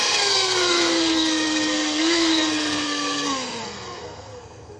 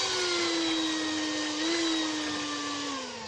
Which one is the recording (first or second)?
second